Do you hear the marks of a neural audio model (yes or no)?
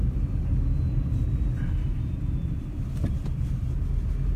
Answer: no